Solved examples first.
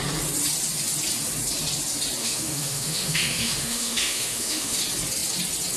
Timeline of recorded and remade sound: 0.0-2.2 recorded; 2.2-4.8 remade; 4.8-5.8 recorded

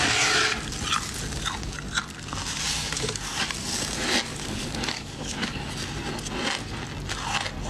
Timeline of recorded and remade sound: 0.0-2.8 recorded; 2.8-3.5 remade; 3.5-4.3 recorded; 4.3-5.7 remade; 5.7-7.7 recorded

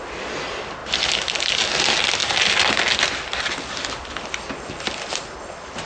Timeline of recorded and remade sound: 0.0-0.8 recorded; 0.8-1.5 remade; 1.5-2.2 recorded; 2.2-5.9 remade

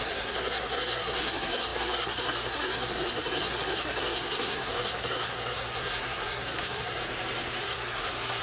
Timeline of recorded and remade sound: 0.0-7.0 remade; 7.0-7.6 recorded; 7.6-8.4 remade

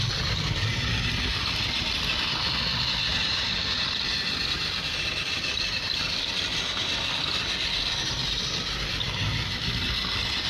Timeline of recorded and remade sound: 0.0-1.3 recorded; 1.3-1.8 remade; 1.8-3.1 recorded; 3.1-7.5 remade; 7.5-10.5 recorded

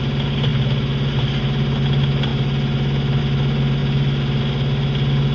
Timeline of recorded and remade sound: 0.0-5.3 recorded

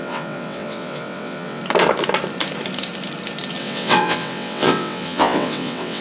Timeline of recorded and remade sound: 0.0-1.6 remade; 1.6-3.6 recorded; 3.6-6.0 remade

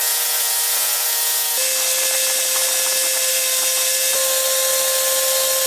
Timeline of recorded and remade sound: 0.0-1.6 remade; 1.6-5.7 recorded